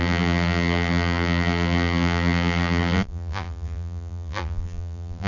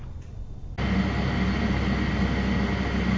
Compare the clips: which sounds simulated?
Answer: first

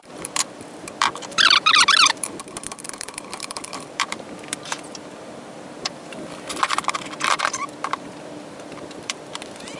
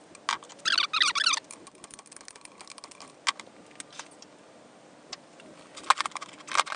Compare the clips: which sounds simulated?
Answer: first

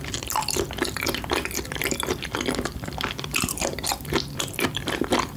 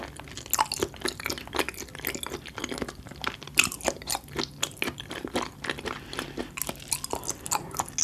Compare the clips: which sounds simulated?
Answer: first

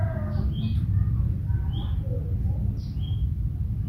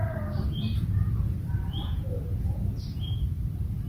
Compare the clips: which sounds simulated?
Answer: second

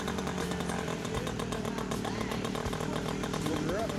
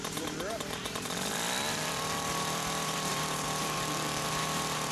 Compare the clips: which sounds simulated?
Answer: second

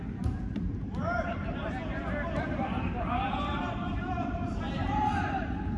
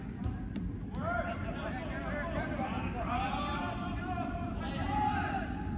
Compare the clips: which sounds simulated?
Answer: first